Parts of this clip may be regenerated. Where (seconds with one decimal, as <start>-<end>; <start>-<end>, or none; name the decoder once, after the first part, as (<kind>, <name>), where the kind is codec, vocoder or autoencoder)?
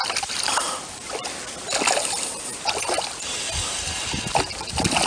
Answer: none